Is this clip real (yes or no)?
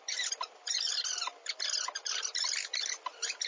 yes